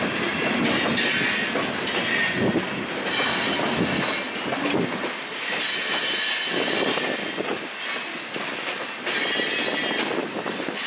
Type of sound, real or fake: real